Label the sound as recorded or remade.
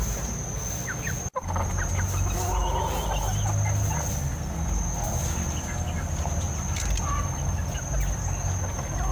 recorded